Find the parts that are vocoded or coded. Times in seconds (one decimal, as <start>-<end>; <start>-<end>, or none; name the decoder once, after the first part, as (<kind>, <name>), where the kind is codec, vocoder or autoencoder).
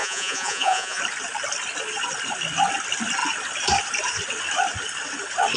0.0-1.0 (vocoder, Vocos)